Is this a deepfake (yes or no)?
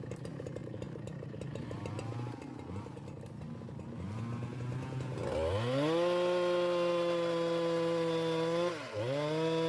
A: no